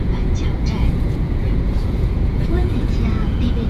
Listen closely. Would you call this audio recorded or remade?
remade